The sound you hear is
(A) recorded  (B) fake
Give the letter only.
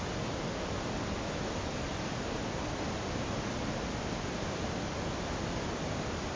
A